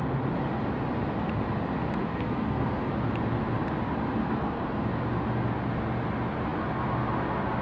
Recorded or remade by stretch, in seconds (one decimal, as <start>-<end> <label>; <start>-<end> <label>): 0.0-2.0 recorded; 2.0-2.9 remade; 2.9-4.2 recorded; 4.2-4.9 remade; 4.9-7.6 recorded